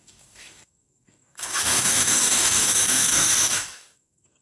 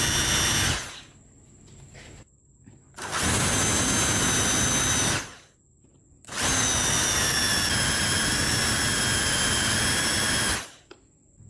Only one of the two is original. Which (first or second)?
second